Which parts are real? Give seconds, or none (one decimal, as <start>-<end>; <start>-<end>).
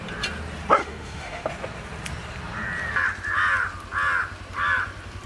0.0-0.8; 1.5-5.3